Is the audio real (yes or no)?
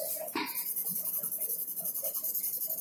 no